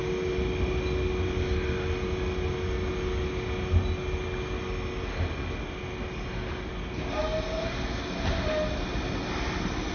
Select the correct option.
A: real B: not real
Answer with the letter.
A